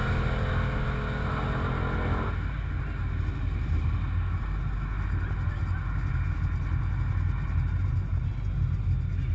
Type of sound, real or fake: real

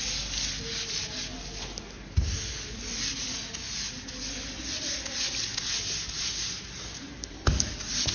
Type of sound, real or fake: real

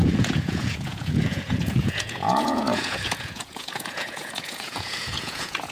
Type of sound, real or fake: fake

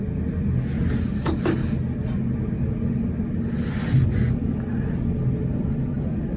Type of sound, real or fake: real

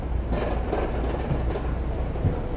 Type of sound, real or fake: real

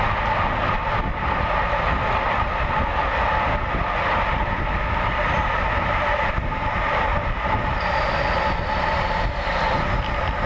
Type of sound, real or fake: real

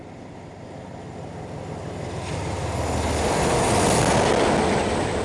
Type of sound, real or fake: real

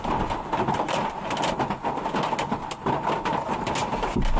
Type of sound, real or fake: real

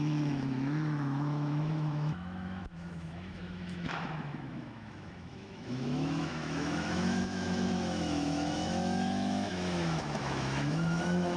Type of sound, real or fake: fake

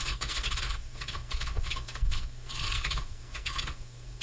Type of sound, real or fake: fake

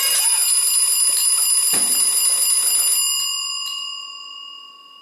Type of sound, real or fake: real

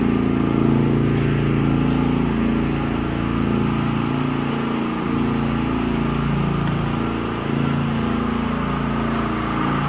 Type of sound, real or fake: real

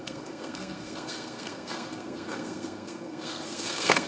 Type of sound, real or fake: fake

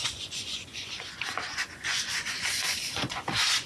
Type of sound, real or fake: fake